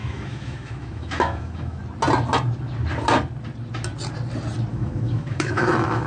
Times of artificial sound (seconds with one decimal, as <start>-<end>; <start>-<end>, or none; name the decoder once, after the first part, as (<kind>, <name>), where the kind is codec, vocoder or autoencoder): 0.0-1.8 (autoencoder, DAC-VAE); 4.7-6.1

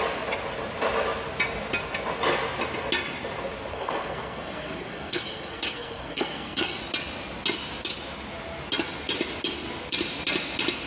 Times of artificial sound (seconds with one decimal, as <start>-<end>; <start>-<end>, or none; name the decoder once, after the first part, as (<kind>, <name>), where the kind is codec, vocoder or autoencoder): 3.7-6.8 (codec, SNAC)

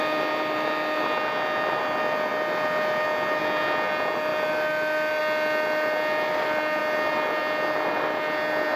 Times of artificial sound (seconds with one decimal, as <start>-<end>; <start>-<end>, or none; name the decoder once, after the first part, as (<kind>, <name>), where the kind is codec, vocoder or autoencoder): none

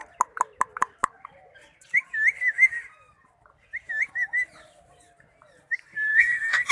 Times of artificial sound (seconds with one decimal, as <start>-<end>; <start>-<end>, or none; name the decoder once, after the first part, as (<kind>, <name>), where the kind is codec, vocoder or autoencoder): 6.1-6.7 (codec, SNAC)

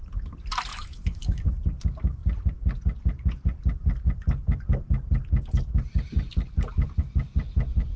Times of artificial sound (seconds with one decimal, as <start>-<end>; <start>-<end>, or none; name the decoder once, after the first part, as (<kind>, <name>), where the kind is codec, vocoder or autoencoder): 0.7-1.4 (autoencoder, DAC-VAE)